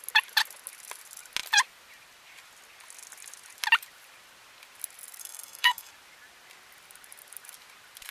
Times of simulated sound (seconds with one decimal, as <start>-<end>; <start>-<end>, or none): 5.2-5.9